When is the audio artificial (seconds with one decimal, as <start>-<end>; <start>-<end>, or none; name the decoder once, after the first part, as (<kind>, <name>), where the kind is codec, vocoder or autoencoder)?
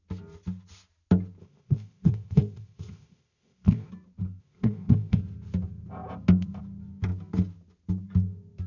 1.4-3.9 (codec, ZipCodec); 4.4-5.2